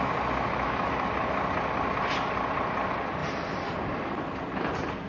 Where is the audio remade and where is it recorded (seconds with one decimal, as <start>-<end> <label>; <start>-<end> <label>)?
0.0-0.5 recorded; 0.5-1.1 remade; 1.1-5.1 recorded